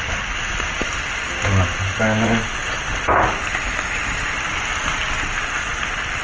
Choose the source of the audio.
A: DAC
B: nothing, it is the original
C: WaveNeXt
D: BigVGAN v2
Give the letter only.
B